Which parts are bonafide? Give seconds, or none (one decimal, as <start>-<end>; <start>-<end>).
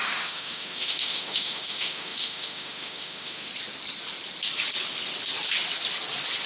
3.5-6.5